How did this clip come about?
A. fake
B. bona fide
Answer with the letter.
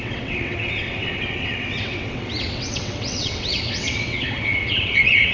A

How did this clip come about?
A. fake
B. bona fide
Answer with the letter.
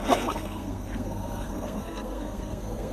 A